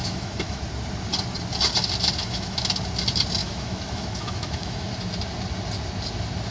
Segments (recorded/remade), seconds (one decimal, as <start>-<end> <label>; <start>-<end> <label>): 0.0-0.6 remade; 0.6-2.2 recorded; 2.2-2.7 remade; 2.7-3.4 recorded; 3.4-4.9 remade; 4.9-6.5 recorded